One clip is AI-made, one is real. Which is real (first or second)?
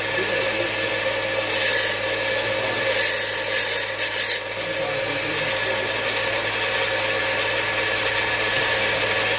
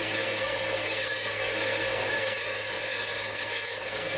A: first